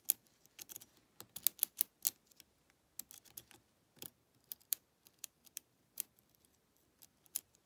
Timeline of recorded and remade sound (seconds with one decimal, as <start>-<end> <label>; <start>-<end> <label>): 0.0-4.1 recorded; 4.1-7.1 remade; 7.1-7.7 recorded